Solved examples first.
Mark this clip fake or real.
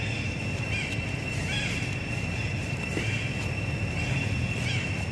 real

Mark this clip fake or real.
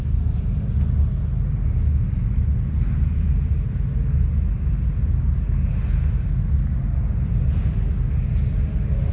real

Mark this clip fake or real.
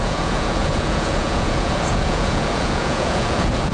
fake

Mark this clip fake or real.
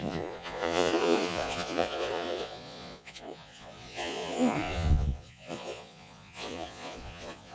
fake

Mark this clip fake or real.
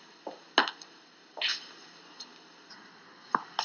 real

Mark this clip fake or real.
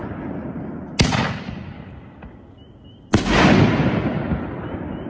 real